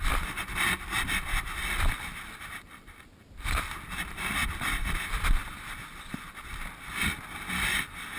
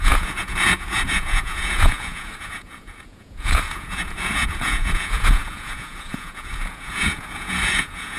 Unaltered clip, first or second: first